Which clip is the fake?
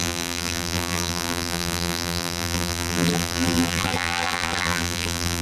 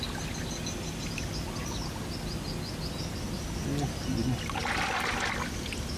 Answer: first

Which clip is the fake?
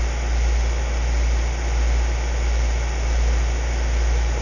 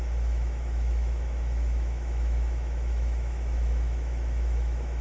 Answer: second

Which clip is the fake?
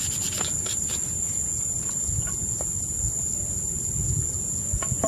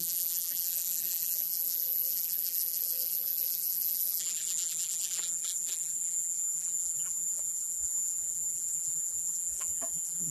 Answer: second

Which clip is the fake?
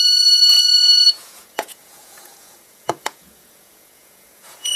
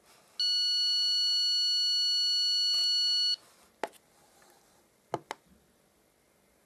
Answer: first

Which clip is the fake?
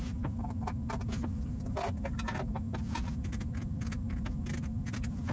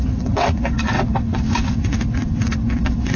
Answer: second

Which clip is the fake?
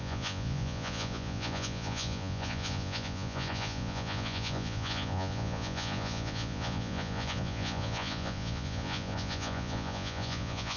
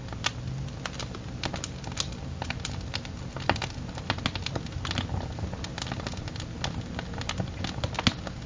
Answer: first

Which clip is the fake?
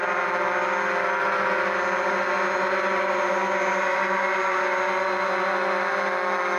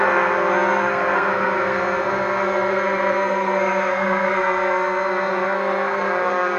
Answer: second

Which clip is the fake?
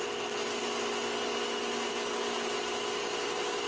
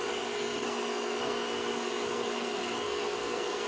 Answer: second